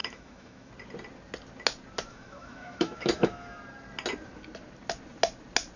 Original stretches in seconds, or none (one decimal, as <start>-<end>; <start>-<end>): 0.7-2.1; 3.6-5.8